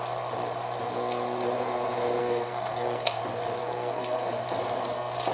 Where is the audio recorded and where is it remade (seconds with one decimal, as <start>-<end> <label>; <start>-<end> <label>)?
0.0-2.2 recorded; 2.2-3.2 remade; 3.2-3.6 recorded; 3.6-4.3 remade; 4.3-5.3 recorded